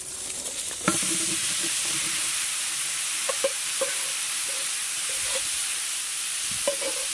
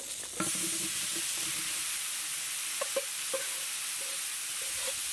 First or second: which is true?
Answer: second